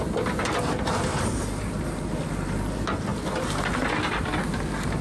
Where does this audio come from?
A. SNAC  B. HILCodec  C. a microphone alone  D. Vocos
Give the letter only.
C